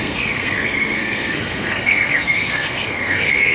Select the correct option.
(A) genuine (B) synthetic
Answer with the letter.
B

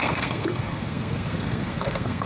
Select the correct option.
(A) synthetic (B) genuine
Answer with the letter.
A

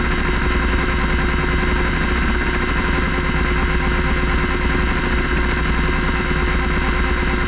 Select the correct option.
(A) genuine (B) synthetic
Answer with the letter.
A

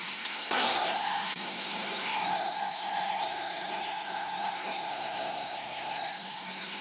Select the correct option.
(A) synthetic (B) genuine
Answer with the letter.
A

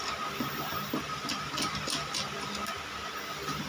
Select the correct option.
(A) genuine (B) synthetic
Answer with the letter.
A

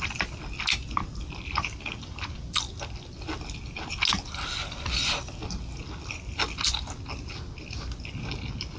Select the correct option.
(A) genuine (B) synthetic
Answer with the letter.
A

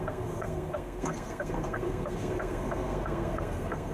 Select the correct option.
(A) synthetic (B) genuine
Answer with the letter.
A